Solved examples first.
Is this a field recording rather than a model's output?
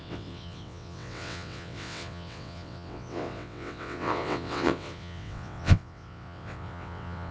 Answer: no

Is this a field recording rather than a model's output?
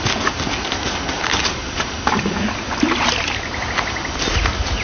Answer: yes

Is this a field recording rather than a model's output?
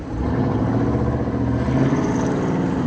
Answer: yes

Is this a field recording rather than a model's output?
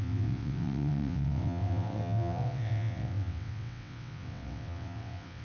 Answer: no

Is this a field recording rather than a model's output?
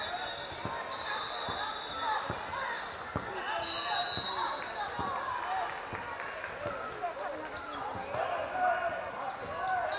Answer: yes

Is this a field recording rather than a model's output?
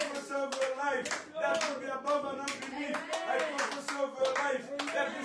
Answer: yes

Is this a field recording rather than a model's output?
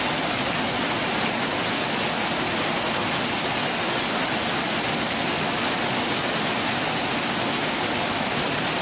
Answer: yes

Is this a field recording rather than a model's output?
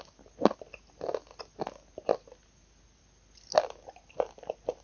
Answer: yes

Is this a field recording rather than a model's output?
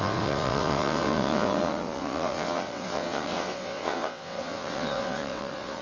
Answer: no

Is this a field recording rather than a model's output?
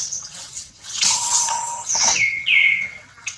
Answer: no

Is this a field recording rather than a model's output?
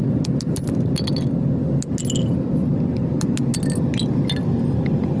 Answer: yes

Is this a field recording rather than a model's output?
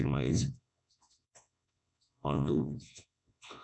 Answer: no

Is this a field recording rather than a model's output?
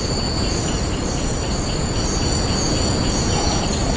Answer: yes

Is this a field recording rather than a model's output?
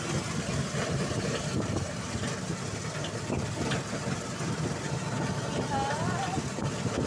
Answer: yes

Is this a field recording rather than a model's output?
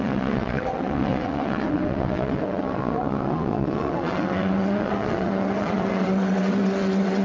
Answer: no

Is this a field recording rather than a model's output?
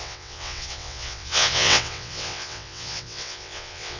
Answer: no